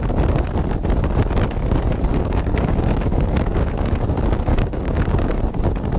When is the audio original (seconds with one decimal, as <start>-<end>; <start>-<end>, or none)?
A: 0.0-2.1; 3.7-4.5; 5.4-6.0